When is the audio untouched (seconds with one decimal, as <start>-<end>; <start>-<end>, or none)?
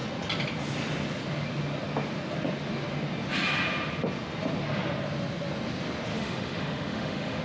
0.0-6.1